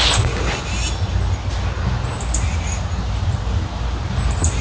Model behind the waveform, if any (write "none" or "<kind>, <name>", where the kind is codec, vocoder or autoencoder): none